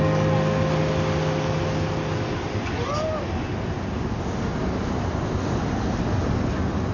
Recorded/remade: recorded